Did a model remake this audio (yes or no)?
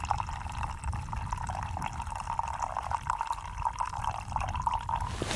no